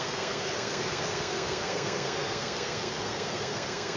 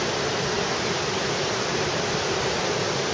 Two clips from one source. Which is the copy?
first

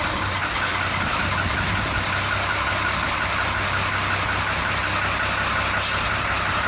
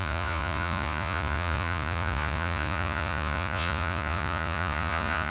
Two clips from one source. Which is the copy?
second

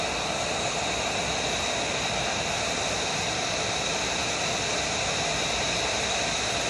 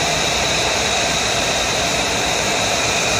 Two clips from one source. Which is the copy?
second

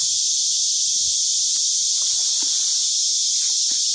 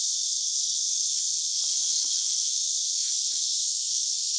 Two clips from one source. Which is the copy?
second